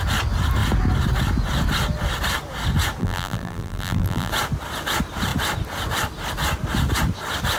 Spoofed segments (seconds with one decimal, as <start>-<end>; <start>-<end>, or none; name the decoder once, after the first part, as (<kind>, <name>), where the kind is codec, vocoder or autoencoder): 3.0-4.3 (vocoder, BigVGAN v2)